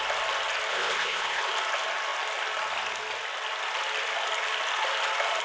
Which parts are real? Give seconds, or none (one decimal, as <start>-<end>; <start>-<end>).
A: 0.0-0.7; 1.4-5.4